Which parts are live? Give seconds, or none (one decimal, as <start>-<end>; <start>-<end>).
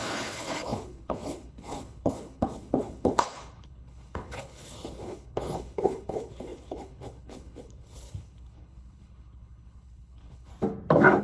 10.5-11.2